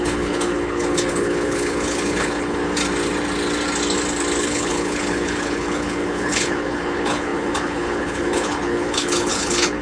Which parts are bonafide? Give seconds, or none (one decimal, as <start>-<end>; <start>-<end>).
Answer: 2.6-4.4